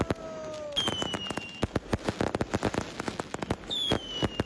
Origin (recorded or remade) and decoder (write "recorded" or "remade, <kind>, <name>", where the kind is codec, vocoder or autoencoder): recorded